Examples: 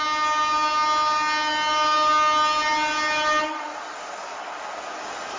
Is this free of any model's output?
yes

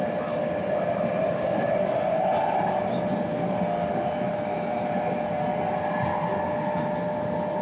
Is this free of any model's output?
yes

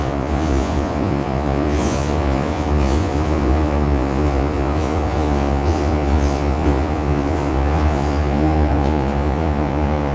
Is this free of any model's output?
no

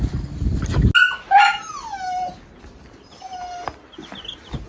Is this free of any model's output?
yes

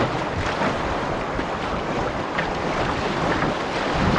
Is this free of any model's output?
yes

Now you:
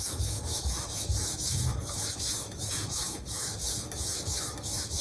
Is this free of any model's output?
no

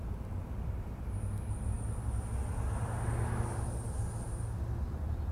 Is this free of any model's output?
yes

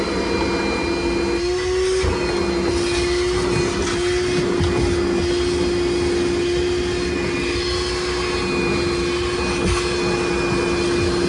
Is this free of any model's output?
yes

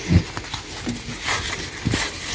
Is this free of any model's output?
yes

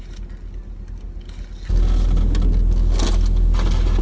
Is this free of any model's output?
yes